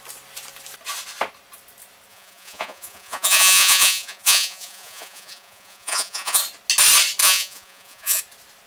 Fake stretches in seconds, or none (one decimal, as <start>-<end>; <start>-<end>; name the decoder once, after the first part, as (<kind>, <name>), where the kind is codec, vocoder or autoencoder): 2.1-6.4 (vocoder, Vocos); 7.2-8.2